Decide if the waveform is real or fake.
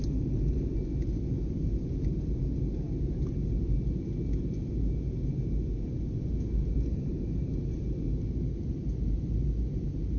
real